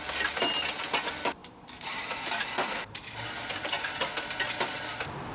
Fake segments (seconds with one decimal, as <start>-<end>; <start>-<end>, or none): 1.4-4.0